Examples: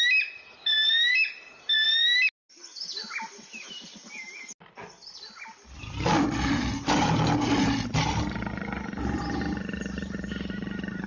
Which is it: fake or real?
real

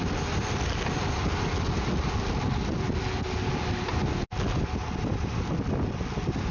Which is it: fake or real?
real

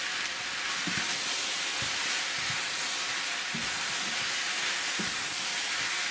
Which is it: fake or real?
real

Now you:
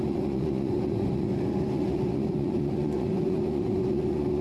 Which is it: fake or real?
fake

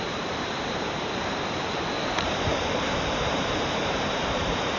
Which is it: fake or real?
fake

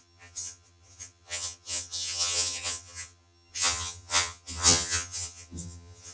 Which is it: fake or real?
fake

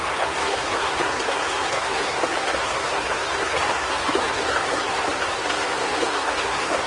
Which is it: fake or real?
fake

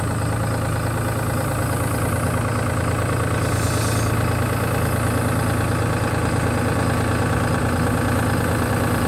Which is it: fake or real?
real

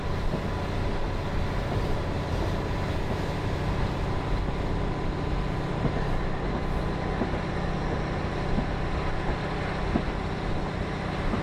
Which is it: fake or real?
real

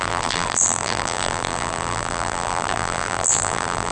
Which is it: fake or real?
fake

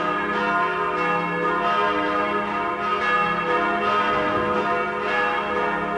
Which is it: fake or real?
real